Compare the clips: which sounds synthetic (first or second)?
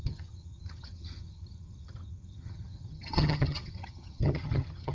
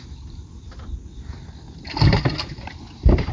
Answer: first